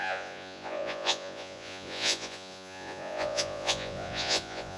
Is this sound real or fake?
fake